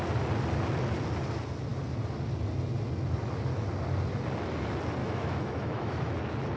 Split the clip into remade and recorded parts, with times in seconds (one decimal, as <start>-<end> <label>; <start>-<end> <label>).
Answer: 0.0-5.0 recorded; 5.0-6.1 remade; 6.1-6.6 recorded